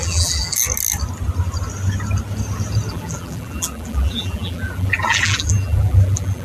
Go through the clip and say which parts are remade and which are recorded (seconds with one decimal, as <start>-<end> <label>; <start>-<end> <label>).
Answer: 0.0-0.5 remade; 0.5-2.9 recorded; 2.9-6.4 remade